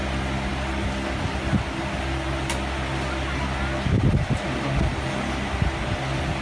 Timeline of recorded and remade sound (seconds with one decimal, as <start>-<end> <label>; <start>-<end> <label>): 0.0-6.4 recorded